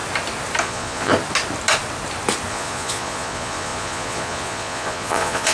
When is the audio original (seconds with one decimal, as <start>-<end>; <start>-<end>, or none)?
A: 0.0-0.6; 1.1-2.5